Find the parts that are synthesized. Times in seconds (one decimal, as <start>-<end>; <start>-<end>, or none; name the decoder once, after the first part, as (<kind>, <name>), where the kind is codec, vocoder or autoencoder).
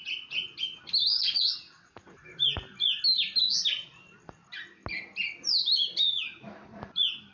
1.1-2.3 (vocoder, Vocos)